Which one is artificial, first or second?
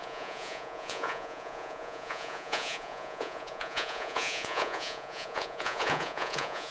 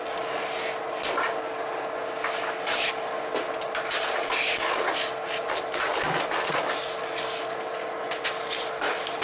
first